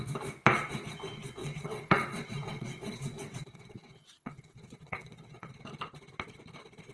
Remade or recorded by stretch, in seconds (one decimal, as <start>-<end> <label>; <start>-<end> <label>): 0.0-1.4 recorded; 1.4-5.5 remade; 5.5-6.9 recorded